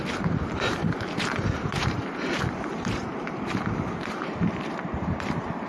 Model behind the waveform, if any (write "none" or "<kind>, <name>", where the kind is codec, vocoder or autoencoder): vocoder, BigVGAN v2